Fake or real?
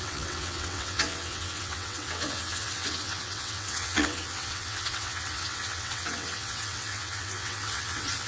fake